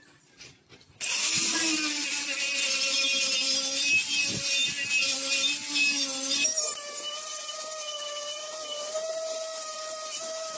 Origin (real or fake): real